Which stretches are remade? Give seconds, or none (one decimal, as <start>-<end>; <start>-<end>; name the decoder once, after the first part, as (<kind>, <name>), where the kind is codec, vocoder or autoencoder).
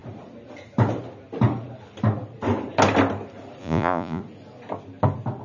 3.6-4.2 (vocoder, Vocos)